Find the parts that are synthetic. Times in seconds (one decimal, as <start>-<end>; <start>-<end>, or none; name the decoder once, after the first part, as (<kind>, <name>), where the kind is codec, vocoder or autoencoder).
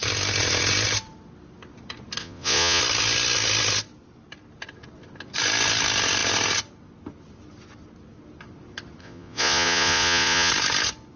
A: 2.2-2.8 (vocoder, Vocos); 9.0-10.5